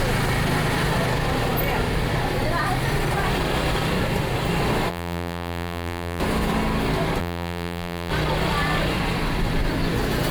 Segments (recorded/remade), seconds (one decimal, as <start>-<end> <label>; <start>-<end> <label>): 0.0-4.9 recorded; 4.9-6.2 remade; 6.2-7.2 recorded; 7.2-8.1 remade; 8.1-10.3 recorded